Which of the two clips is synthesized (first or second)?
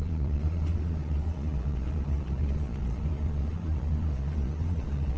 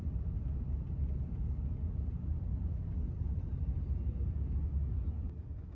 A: first